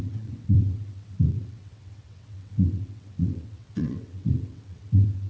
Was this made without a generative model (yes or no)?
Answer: no